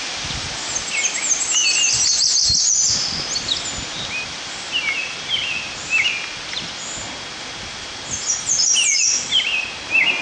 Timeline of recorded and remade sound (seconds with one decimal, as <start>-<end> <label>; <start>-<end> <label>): 0.0-10.2 recorded